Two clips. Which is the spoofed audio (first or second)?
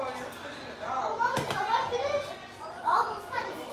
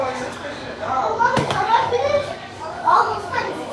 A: second